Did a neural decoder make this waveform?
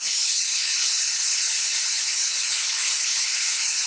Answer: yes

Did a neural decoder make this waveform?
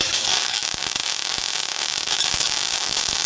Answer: yes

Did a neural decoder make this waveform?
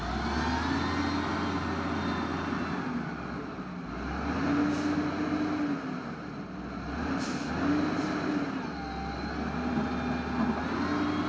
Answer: no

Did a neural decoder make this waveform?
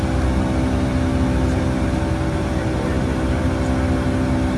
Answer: no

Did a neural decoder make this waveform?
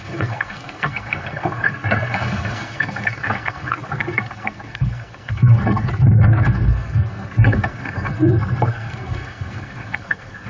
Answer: yes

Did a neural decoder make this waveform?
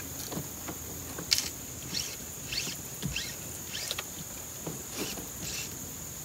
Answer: no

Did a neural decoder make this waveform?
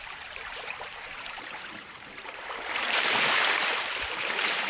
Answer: yes